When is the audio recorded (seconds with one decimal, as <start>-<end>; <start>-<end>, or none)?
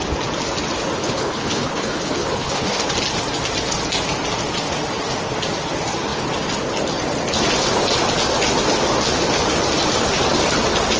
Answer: 0.0-1.0; 2.9-11.0